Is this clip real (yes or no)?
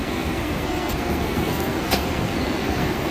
no